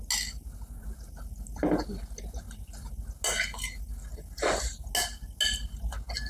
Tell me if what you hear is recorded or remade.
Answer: recorded